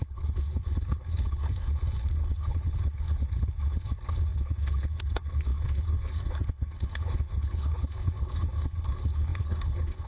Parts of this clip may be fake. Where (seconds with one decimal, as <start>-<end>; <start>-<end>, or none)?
0.0-10.1